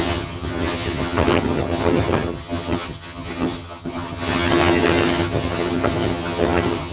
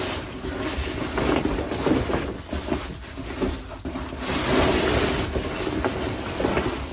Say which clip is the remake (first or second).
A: first